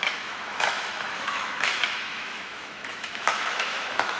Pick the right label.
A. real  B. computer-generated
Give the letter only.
B